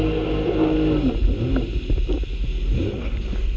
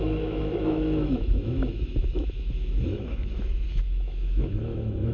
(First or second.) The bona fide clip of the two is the first